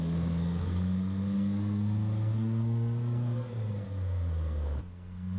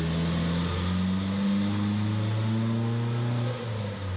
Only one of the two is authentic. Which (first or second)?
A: second